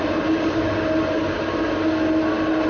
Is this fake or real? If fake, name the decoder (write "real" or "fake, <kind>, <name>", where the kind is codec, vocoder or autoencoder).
real